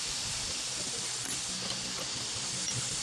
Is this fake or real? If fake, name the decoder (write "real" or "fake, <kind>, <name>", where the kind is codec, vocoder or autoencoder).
fake, vocoder, BigVGAN v2